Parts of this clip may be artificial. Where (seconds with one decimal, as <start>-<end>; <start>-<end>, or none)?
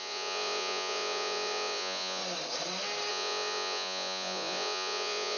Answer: 0.0-2.2; 3.1-5.4